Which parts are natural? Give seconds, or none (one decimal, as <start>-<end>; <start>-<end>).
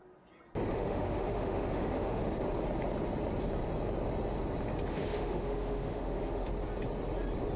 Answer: 0.0-0.7; 2.2-4.9; 6.5-7.6